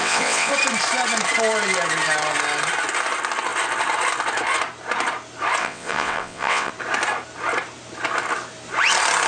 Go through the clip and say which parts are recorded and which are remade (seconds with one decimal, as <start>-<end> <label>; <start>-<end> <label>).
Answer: 0.0-0.5 remade; 0.5-5.6 recorded; 5.6-6.7 remade; 6.7-9.3 recorded